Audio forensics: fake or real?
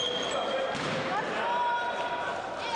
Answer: real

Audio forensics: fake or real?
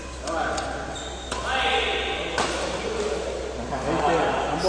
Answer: real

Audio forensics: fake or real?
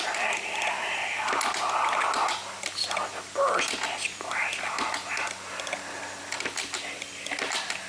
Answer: real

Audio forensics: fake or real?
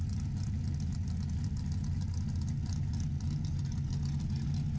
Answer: real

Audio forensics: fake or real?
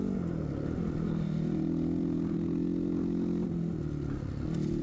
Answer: real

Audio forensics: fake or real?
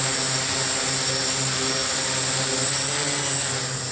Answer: real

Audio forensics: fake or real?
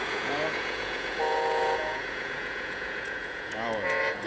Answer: fake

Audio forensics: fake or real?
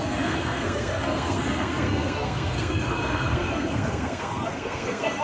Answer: fake